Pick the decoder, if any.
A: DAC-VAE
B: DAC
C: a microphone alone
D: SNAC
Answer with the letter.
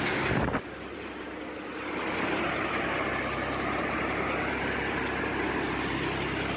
C